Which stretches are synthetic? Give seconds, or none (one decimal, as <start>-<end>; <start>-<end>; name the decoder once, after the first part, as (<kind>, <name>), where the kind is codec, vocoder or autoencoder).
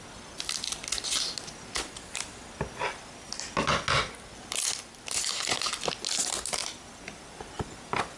6.6-8.2 (vocoder, BigVGAN v2)